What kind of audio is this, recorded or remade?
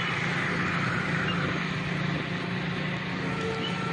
recorded